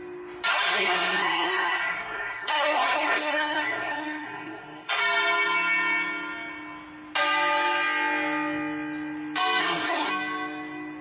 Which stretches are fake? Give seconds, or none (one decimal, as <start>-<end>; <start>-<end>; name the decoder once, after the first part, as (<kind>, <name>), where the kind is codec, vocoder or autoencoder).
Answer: 0.5-5.0 (codec, SNAC); 9.6-10.1